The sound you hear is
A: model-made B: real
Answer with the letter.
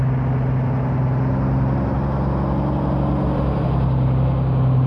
B